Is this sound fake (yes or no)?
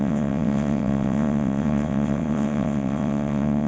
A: yes